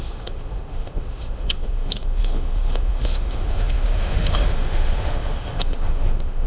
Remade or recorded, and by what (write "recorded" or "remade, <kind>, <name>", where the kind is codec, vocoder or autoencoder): remade, autoencoder, DAC-VAE